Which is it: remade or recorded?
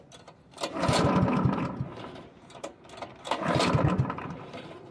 recorded